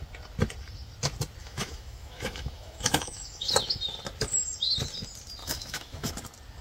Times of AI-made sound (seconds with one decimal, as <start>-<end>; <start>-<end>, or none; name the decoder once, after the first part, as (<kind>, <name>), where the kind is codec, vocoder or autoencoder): 1.4-3.5 (autoencoder, DAC-VAE); 5.4-6.1